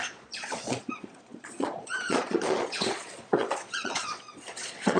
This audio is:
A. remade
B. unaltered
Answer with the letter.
A